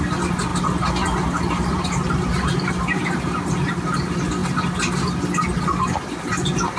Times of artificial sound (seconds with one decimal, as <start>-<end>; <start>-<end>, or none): 0.5-3.2